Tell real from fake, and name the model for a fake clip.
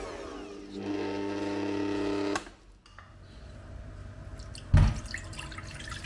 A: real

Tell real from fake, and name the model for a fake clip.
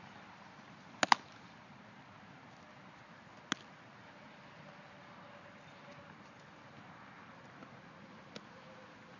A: real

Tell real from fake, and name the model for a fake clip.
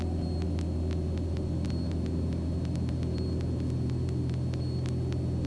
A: real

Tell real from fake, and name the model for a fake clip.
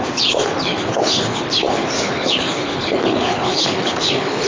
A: fake, codec, HILCodec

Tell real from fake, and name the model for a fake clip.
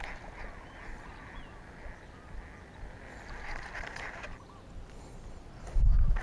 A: real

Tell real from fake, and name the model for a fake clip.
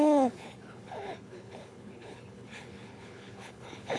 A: fake, codec, HILCodec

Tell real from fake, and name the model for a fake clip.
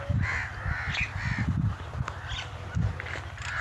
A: real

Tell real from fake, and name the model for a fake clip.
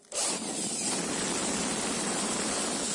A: real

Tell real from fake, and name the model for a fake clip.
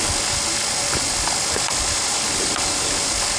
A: real